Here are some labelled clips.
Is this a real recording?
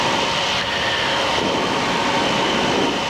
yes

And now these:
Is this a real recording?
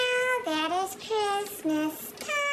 yes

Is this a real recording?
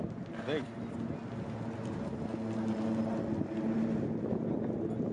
yes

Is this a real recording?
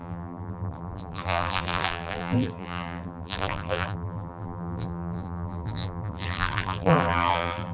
no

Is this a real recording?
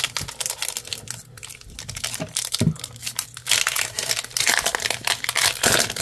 yes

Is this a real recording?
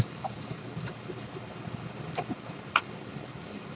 no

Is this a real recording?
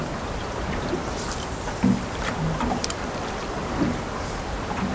yes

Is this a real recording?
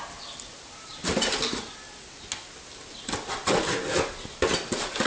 yes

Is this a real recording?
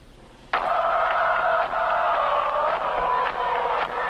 yes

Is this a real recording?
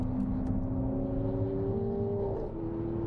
yes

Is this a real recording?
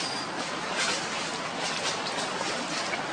yes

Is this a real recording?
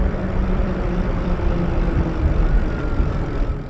no